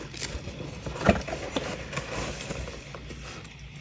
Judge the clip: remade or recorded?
recorded